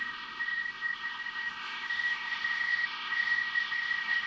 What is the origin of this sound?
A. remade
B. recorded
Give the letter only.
A